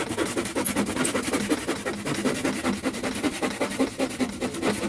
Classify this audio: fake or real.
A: real